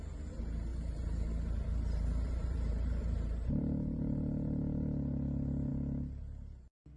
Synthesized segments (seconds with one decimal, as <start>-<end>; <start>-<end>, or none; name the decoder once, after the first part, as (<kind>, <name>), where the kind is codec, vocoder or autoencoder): 0.7-4.6 (vocoder, BigVGAN v2)